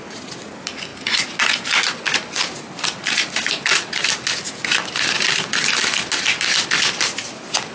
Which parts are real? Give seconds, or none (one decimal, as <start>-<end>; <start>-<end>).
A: 0.0-7.7